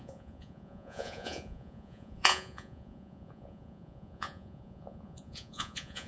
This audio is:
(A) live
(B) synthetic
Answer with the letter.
B